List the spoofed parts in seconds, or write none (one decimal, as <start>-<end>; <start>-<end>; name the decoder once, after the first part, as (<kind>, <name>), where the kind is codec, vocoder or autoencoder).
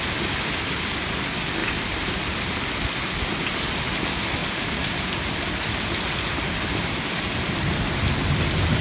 1.6-2.2 (vocoder, BigVGAN v2); 4.4-5.3; 6.7-7.8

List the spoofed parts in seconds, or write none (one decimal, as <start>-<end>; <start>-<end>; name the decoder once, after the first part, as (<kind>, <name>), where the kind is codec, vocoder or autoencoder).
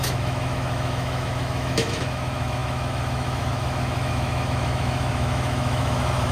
0.0-6.3 (autoencoder, DAC-VAE)